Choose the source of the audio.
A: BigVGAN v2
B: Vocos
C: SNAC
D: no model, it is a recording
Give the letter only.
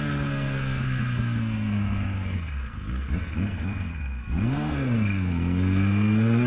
C